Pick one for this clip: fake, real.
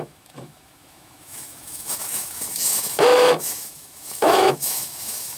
fake